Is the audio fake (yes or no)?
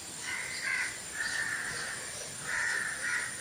no